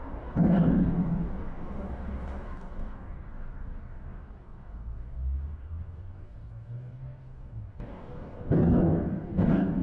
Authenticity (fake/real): fake